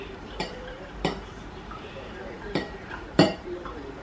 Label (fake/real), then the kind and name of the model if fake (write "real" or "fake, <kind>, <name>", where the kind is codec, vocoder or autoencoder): fake, vocoder, BigVGAN v2